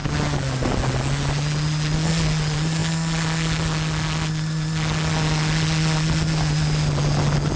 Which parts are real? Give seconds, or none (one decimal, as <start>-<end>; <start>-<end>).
0.0-7.6